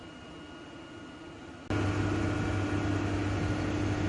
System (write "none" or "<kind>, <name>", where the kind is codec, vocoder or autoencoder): none